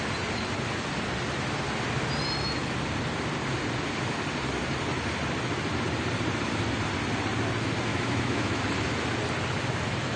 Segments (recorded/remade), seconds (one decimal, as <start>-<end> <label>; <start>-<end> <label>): 0.0-7.9 recorded; 7.9-8.6 remade; 8.6-10.2 recorded